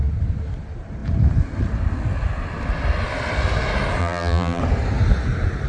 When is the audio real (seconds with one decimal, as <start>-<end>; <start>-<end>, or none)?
0.0-4.0; 4.6-5.7